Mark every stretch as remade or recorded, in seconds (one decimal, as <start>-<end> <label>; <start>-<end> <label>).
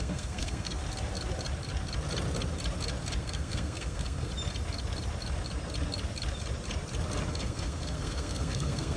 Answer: 0.0-0.8 remade; 0.8-3.2 recorded; 3.2-4.3 remade; 4.3-7.3 recorded; 7.3-9.0 remade